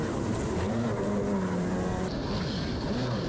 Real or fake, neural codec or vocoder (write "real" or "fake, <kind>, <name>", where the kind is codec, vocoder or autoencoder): real